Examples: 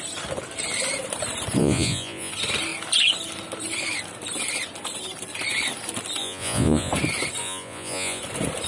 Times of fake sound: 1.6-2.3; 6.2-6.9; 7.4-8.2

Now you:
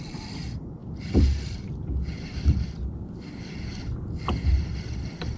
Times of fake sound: none

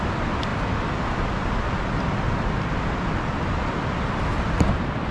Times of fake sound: none